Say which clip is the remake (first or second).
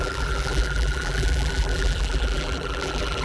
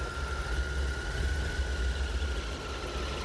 first